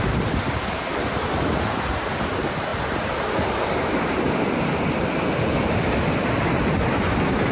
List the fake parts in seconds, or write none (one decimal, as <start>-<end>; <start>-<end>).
none